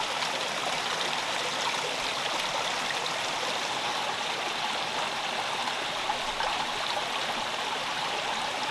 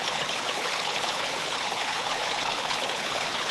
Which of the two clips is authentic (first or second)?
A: first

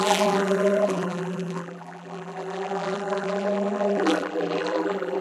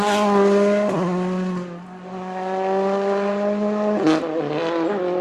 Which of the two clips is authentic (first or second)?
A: second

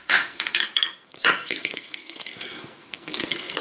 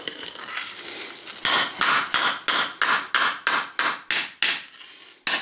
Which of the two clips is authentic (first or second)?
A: second